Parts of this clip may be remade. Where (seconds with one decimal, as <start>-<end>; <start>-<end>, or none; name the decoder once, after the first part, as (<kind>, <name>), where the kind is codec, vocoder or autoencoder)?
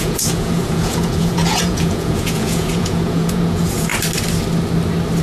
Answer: 0.0-3.9 (vocoder, Vocos)